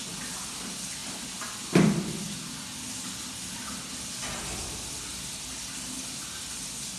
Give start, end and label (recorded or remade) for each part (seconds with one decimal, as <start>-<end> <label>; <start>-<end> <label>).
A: 0.0-7.0 recorded